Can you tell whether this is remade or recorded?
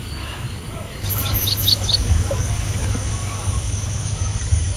remade